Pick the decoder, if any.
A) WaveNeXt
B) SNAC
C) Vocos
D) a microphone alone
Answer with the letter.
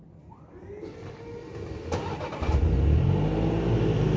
D